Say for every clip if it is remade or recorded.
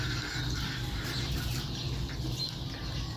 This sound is recorded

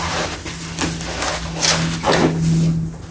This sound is recorded